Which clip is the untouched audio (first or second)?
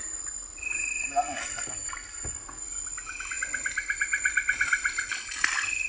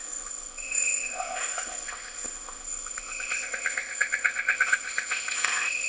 first